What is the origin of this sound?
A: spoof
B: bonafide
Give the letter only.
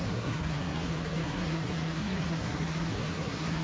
A